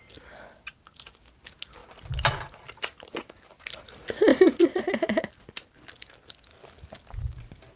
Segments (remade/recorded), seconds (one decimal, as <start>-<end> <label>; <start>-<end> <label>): 0.0-1.8 recorded; 1.8-3.4 remade; 3.4-4.3 recorded; 4.3-4.8 remade; 4.8-7.8 recorded